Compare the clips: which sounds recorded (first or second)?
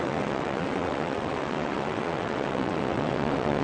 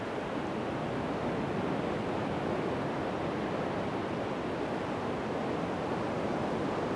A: second